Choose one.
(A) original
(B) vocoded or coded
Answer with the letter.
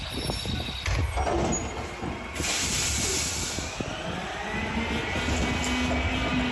A